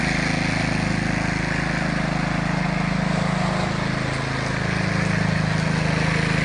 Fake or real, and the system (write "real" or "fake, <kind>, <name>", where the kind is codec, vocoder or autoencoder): real